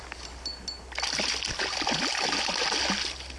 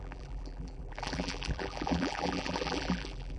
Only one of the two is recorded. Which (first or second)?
first